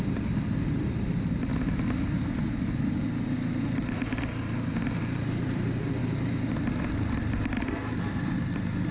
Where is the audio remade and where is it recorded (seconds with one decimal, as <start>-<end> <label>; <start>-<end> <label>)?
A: 0.0-1.5 remade; 1.5-3.9 recorded; 3.9-6.0 remade; 6.0-8.1 recorded; 8.1-8.9 remade